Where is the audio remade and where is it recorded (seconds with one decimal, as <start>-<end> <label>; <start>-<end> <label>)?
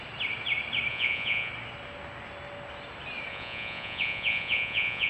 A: 0.0-0.9 recorded; 0.9-1.5 remade; 1.5-3.3 recorded; 3.3-5.1 remade